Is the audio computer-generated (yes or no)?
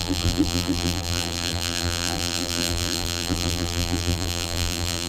yes